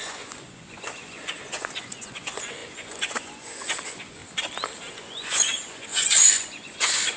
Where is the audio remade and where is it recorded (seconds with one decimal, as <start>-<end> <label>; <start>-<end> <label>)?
0.0-4.2 remade; 4.2-4.9 recorded; 4.9-7.2 remade